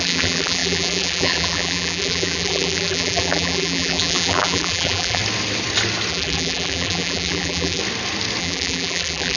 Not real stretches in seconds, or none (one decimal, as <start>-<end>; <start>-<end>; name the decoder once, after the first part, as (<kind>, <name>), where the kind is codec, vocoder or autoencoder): 0.0-5.2 (vocoder, BigVGAN v2); 6.1-7.8; 8.4-9.4